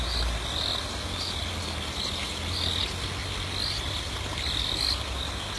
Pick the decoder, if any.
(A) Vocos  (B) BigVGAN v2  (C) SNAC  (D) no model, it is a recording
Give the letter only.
D